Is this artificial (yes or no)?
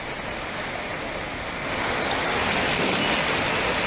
no